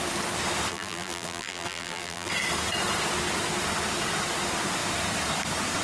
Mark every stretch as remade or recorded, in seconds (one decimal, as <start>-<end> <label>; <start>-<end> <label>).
0.0-0.7 recorded; 0.7-2.3 remade; 2.3-5.8 recorded